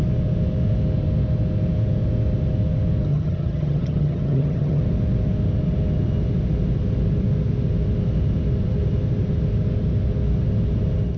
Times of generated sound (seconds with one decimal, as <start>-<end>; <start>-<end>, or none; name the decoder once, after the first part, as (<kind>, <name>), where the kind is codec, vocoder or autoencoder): 3.1-4.8 (vocoder, HiFi-GAN)